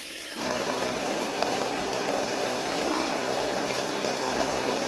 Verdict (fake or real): fake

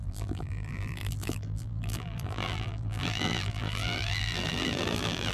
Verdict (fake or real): fake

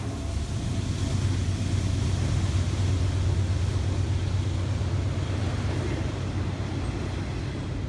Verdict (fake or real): real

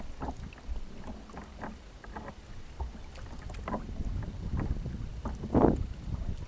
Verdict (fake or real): real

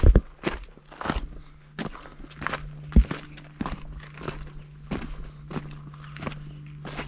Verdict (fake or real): real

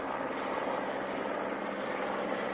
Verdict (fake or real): real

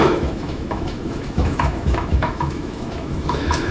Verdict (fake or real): fake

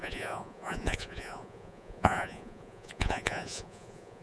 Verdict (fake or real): fake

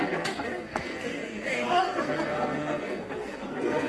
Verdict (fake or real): fake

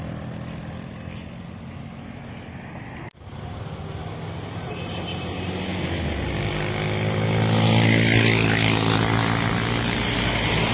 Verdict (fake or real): real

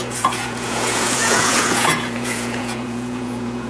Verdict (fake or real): fake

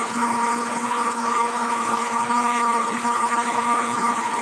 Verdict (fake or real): fake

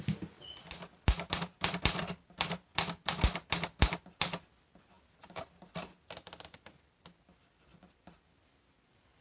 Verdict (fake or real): real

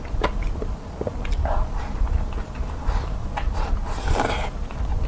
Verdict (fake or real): real